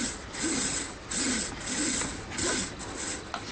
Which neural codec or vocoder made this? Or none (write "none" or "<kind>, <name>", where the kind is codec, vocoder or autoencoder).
none